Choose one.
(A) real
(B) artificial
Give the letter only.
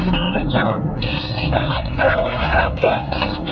B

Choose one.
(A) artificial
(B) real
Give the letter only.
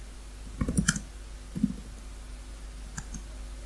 B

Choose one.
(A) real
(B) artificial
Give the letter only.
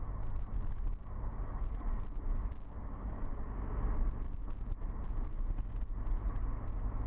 A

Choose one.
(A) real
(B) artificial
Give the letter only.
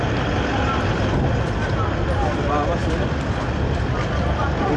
A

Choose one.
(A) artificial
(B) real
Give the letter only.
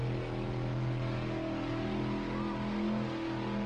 B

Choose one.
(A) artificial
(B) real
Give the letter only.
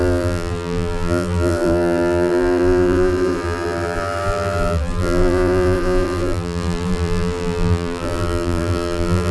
A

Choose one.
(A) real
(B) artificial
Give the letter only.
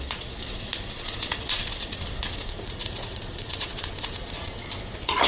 B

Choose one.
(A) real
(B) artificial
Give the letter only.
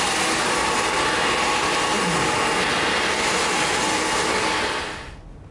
A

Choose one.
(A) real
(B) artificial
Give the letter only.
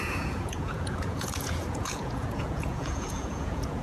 B